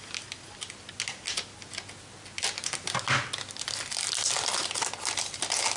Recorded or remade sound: recorded